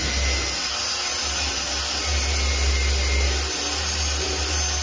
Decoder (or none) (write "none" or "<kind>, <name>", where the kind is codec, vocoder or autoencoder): none